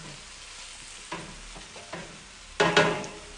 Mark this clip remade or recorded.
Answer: recorded